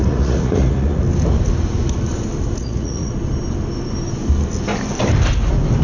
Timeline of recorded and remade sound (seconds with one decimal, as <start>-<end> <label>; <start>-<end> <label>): 0.0-1.0 remade; 1.0-2.6 recorded; 2.6-3.1 remade; 3.1-5.8 recorded